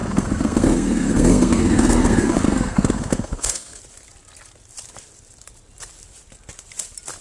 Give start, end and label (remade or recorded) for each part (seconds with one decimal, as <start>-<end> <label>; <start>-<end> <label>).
0.0-3.8 remade; 3.8-7.2 recorded

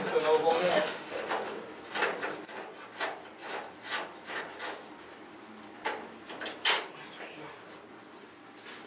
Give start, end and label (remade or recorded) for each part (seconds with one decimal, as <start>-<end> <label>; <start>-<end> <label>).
0.0-0.5 recorded; 0.5-1.1 remade; 1.1-8.9 recorded